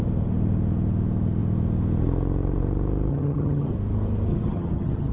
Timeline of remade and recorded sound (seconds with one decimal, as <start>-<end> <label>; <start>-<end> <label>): 0.0-3.1 recorded; 3.1-3.7 remade; 3.7-4.3 recorded; 4.3-5.1 remade